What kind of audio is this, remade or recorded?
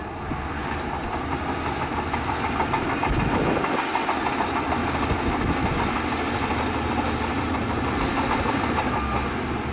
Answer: recorded